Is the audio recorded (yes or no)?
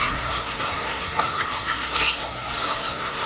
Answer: no